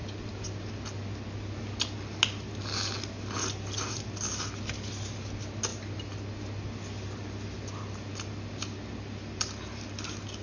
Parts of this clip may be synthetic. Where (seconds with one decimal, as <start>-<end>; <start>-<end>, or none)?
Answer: none